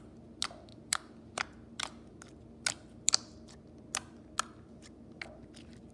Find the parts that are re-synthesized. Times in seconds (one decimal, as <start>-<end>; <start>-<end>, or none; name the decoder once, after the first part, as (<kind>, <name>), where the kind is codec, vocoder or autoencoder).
none